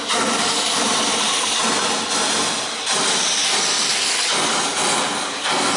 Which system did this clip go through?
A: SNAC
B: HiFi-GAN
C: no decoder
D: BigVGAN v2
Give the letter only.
C